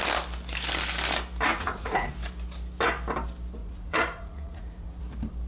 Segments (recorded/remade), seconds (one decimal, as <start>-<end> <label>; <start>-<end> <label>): 0.0-1.5 recorded; 1.5-2.1 remade; 2.1-3.6 recorded; 3.6-5.0 remade; 5.0-5.5 recorded